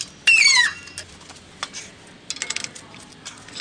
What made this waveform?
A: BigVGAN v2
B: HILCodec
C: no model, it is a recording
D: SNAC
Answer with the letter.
C